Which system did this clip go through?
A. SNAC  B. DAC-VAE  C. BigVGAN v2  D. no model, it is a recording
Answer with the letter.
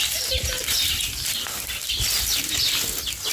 D